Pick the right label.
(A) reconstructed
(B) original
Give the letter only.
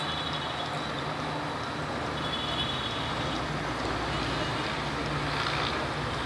B